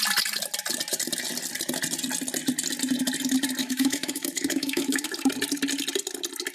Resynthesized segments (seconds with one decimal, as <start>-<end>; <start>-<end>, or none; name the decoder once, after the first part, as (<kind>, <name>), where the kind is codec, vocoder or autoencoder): 3.6-5.1 (autoencoder, DAC-VAE)